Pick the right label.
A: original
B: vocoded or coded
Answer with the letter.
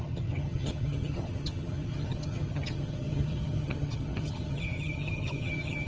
B